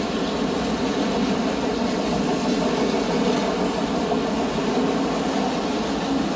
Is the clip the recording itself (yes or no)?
yes